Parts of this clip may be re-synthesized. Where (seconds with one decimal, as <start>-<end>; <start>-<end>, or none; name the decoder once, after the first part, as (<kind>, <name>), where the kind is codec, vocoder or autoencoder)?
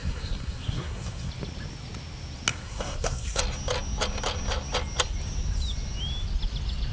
0.0-1.3 (codec, SNAC); 2.5-3.4